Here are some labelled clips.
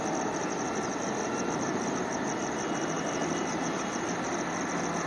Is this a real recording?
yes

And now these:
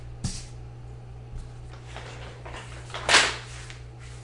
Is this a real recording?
yes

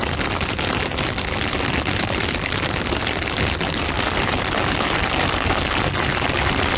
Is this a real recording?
yes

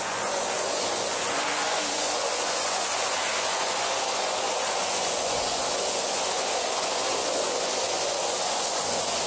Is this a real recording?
no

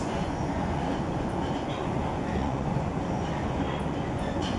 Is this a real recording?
no